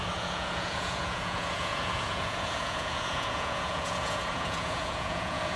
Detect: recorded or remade remade